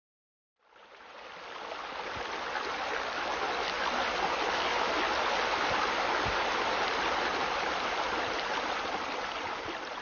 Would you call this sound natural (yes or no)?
yes